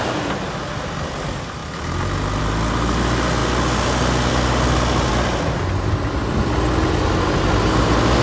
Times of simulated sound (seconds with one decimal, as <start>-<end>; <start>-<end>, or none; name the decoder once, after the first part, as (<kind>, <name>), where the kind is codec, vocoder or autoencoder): none